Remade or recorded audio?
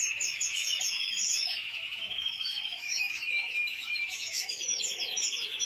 remade